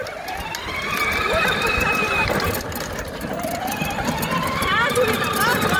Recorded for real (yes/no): yes